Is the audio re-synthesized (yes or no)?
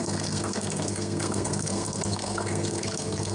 yes